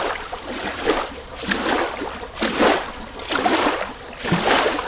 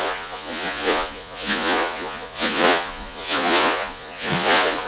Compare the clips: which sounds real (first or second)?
first